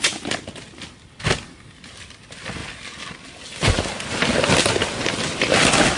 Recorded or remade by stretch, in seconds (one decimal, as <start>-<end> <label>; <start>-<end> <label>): 0.0-6.0 recorded